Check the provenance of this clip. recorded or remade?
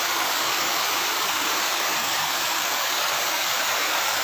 remade